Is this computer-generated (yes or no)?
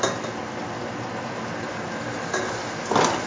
no